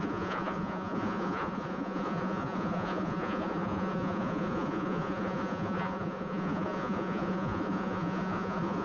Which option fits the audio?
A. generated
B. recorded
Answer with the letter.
A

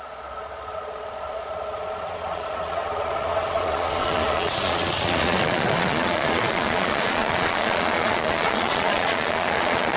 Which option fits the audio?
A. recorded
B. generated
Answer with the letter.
B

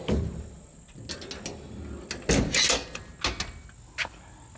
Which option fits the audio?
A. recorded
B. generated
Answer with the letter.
A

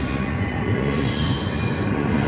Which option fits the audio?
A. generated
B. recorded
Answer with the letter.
A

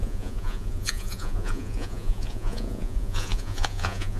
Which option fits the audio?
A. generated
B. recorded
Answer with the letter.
A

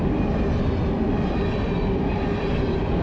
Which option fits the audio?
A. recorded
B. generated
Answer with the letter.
A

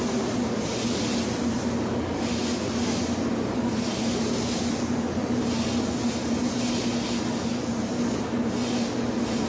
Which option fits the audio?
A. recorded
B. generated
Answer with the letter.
A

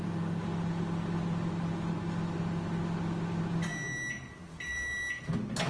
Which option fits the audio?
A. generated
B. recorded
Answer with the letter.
B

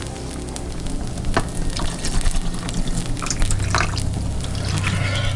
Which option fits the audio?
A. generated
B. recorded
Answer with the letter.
B